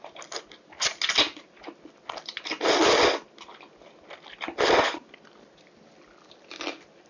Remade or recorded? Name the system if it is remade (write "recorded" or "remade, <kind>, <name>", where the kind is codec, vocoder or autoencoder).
recorded